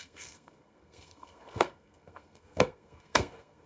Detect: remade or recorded remade